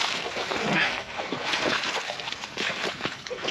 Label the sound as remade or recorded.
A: remade